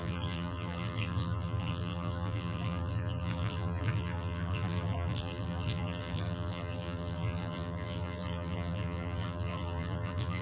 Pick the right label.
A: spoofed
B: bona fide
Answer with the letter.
A